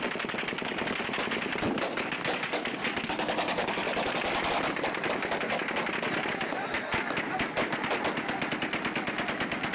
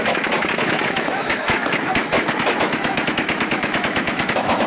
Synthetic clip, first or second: second